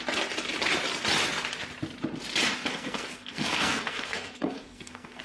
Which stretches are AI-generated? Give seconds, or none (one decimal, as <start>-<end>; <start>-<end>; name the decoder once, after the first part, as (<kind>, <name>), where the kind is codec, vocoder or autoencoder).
2.7-5.2 (codec, SNAC)